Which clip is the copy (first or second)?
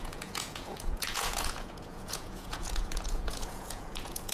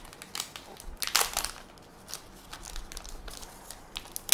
first